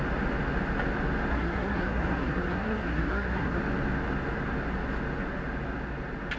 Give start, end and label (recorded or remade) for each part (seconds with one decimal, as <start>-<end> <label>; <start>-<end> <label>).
0.0-1.3 recorded; 1.3-3.6 remade; 3.6-6.4 recorded